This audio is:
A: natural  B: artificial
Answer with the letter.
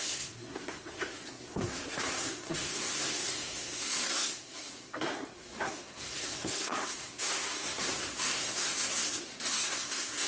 B